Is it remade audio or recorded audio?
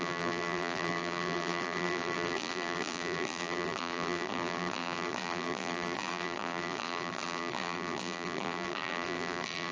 remade